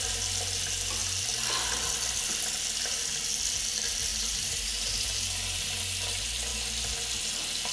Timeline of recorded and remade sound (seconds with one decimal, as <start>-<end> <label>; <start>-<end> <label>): 0.0-4.1 recorded; 4.1-5.8 remade; 5.8-7.7 recorded